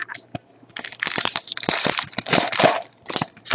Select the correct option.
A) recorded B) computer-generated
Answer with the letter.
A